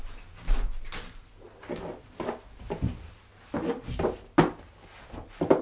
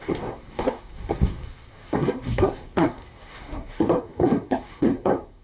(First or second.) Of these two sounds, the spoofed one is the second